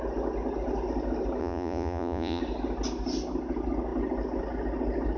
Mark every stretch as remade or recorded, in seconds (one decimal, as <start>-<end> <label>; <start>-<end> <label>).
0.0-1.4 recorded; 1.4-2.4 remade; 2.4-5.2 recorded